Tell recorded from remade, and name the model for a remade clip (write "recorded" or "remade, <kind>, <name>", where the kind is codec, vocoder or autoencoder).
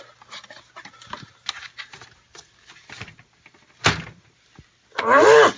recorded